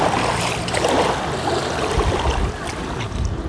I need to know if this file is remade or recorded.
recorded